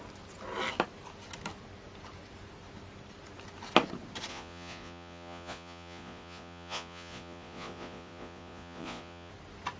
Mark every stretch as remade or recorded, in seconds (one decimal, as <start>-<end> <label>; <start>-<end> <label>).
0.0-4.3 recorded; 4.3-9.3 remade; 9.3-9.8 recorded